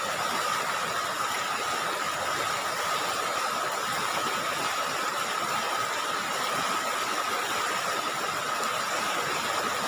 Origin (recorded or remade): recorded